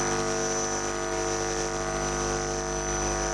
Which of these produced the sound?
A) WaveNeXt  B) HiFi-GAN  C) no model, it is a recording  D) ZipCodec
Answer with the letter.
C